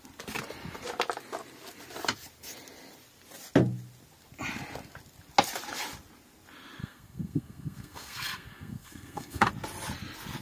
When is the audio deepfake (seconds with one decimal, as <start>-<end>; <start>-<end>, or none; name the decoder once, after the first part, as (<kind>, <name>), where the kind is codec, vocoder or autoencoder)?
6.8-9.5 (codec, SNAC)